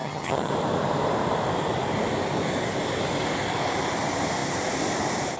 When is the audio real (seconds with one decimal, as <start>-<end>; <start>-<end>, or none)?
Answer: 0.5-5.4